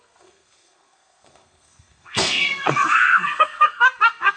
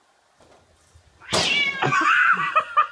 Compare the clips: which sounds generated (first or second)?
first